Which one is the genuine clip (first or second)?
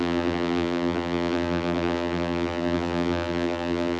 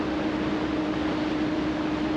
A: second